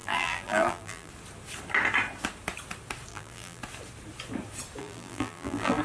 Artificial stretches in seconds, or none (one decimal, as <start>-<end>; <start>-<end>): 0.0-1.1; 3.1-3.6; 4.8-5.8